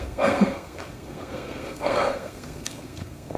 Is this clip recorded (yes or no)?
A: no